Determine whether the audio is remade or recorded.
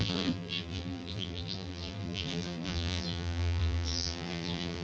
remade